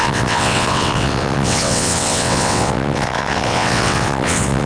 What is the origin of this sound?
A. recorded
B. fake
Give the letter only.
B